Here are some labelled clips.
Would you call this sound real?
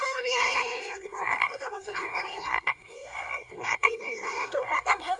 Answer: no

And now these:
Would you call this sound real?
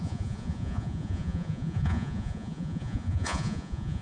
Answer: no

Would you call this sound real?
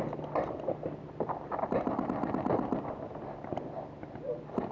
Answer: yes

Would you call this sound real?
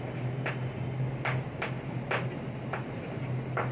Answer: yes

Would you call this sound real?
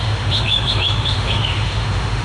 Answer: no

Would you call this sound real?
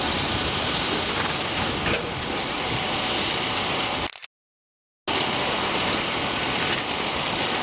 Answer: yes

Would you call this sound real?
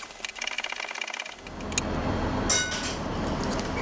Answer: yes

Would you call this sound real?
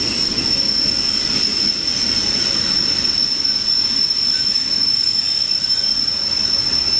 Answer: yes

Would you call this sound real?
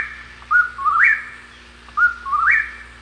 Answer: yes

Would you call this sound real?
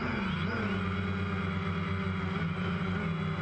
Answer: yes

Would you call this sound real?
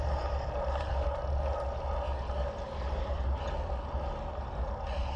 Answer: yes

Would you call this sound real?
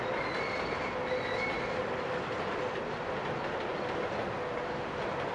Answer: yes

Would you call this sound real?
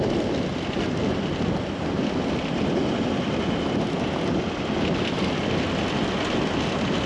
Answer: yes